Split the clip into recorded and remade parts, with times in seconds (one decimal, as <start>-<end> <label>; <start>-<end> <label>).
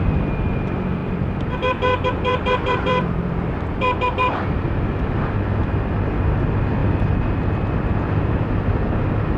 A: 0.0-1.0 recorded; 1.0-4.3 remade; 4.3-9.4 recorded